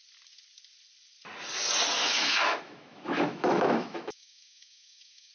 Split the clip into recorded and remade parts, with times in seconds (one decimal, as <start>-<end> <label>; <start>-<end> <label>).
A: 0.0-2.0 recorded; 2.0-5.3 remade